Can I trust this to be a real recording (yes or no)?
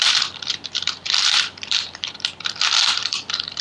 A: no